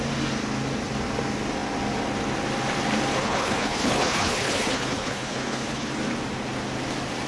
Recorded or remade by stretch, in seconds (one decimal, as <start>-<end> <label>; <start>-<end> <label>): 0.0-3.2 recorded; 3.2-5.9 remade; 5.9-7.3 recorded